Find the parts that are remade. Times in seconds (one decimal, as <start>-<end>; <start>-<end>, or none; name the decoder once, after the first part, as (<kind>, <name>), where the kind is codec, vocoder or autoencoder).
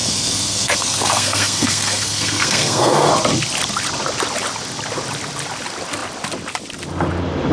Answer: 0.0-3.1 (codec, SNAC)